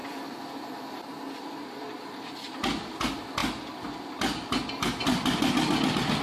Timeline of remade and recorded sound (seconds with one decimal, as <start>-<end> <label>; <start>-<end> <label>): 0.0-1.2 remade; 1.2-3.4 recorded; 3.4-4.5 remade; 4.5-6.2 recorded